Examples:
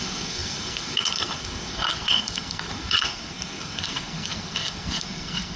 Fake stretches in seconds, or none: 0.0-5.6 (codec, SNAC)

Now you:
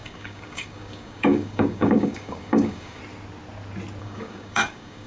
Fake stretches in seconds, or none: 0.0-3.0 (codec, DAC); 4.0-5.1

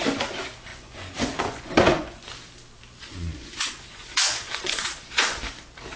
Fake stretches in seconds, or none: 0.7-2.3 (vocoder, Vocos); 3.1-5.4